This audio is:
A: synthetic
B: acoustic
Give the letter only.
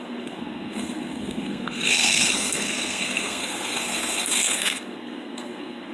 A